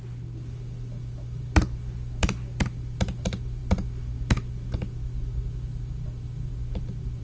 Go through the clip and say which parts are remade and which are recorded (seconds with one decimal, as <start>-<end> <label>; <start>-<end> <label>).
0.0-7.2 recorded